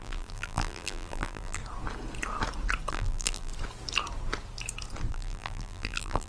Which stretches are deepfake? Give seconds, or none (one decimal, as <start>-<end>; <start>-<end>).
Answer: 0.0-1.6; 2.9-3.5; 5.1-6.3